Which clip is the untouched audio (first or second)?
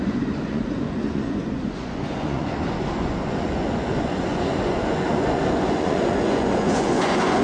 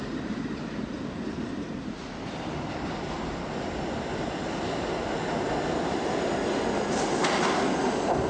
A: second